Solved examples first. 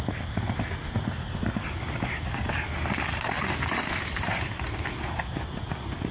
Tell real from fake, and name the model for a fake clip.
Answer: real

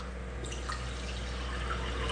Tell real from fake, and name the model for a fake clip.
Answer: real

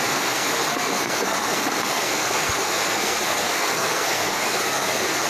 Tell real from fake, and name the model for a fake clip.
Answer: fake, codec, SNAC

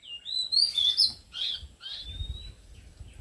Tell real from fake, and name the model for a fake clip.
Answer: real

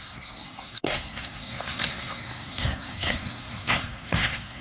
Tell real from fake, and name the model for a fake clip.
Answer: fake, codec, SNAC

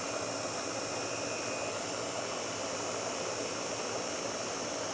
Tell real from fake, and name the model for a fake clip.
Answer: real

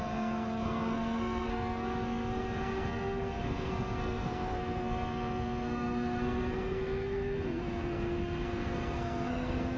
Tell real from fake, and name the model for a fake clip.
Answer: fake, codec, SNAC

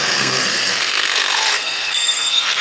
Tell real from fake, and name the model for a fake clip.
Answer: fake, codec, SNAC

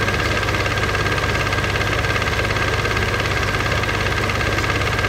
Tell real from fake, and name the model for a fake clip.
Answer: real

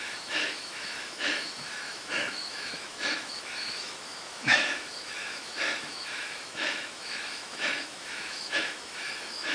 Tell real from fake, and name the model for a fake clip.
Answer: fake, autoencoder, DAC-VAE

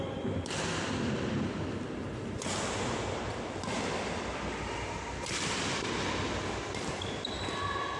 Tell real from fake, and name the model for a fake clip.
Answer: real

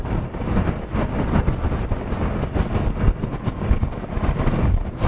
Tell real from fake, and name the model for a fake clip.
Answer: real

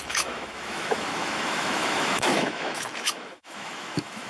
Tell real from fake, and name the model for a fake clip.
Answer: fake, autoencoder, DAC-VAE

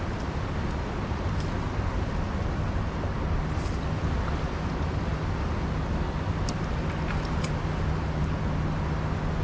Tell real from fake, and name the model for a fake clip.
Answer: real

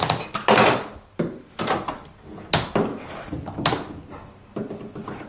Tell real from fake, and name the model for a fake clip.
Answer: real